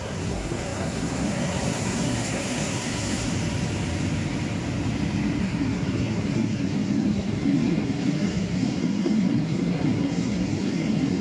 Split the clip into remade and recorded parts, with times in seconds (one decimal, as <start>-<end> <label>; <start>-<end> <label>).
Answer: 0.0-3.3 remade; 3.3-5.4 recorded; 5.4-11.2 remade